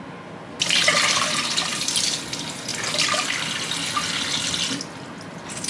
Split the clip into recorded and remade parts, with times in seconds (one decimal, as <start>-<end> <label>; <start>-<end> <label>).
0.0-5.7 recorded